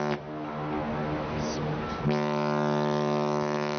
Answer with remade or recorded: recorded